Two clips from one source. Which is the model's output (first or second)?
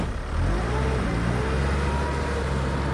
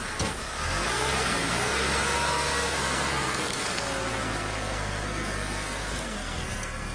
second